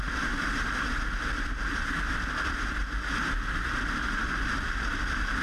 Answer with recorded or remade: remade